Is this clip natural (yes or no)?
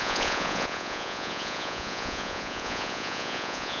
no